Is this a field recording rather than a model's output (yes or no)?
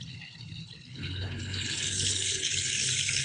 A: no